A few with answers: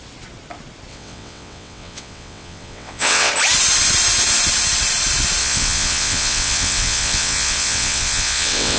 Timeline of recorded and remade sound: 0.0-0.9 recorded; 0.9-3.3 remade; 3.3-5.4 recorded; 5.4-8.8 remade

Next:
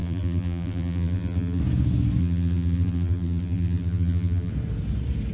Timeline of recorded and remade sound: 0.0-1.6 remade; 1.6-2.2 recorded; 2.2-4.5 remade; 4.5-5.3 recorded

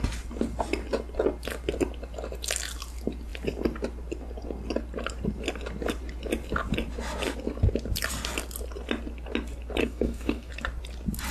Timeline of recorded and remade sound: 0.0-9.8 recorded; 9.8-10.5 remade; 10.5-11.3 recorded